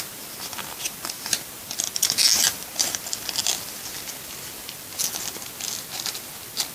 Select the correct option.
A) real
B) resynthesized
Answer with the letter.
A